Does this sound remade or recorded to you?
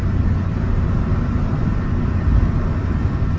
recorded